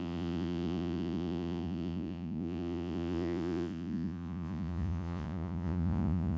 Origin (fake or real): fake